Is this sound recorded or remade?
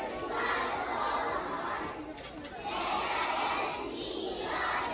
recorded